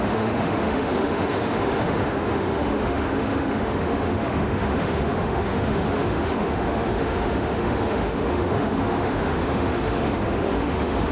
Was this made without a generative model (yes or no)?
no